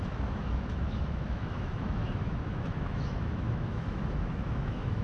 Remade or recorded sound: remade